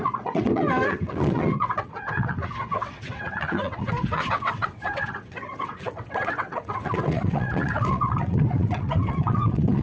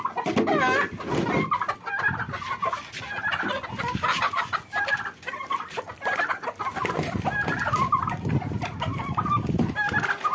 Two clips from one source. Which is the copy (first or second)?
first